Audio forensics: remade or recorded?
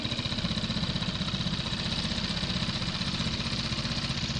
recorded